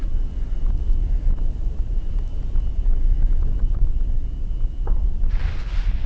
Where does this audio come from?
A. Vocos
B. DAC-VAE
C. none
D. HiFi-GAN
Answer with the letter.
C